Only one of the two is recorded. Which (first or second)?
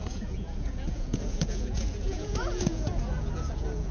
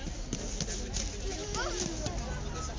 second